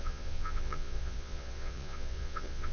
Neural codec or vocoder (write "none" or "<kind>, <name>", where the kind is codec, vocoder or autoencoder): vocoder, Vocos